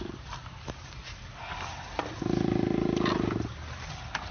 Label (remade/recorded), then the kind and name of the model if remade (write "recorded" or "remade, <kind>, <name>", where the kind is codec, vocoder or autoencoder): recorded